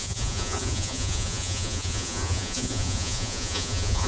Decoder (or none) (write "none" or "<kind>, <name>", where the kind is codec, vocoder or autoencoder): vocoder, Vocos